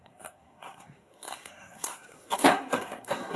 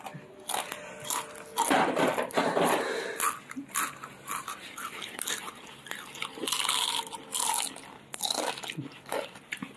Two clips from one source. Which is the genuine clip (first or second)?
second